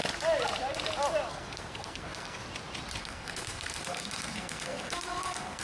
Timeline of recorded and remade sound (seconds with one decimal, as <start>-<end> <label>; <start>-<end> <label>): 0.0-1.3 recorded; 1.3-2.4 remade; 2.4-3.0 recorded; 3.0-5.6 remade